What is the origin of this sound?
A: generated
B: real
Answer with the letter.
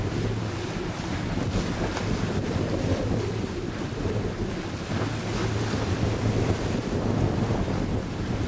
B